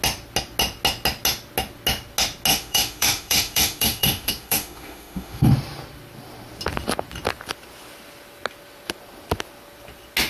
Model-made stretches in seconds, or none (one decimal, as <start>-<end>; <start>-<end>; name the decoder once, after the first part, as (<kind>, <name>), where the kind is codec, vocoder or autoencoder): 2.5-5.5 (autoencoder, DAC-VAE)